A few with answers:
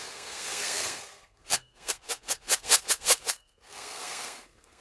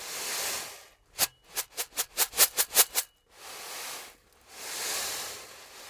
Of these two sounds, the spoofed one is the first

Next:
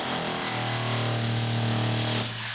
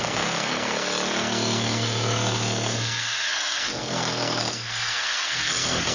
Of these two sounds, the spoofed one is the second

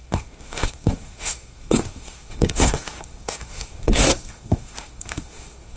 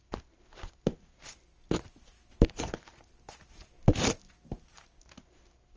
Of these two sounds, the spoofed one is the first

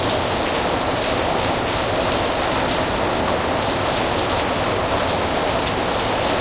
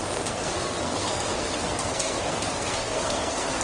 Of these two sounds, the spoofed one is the second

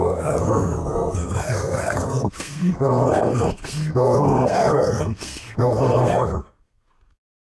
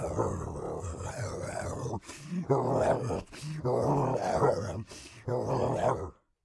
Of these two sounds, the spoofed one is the first